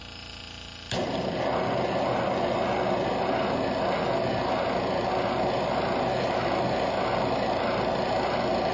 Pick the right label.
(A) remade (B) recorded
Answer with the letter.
B